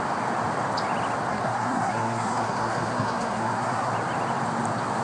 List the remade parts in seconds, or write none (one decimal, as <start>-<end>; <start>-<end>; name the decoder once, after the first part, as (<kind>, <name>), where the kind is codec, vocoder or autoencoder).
1.3-3.9 (codec, SNAC)